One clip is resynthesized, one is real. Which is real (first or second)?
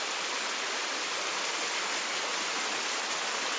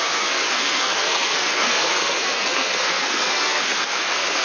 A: first